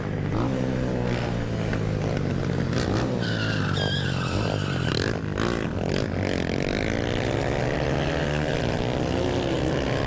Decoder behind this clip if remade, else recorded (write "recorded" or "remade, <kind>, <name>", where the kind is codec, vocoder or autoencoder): recorded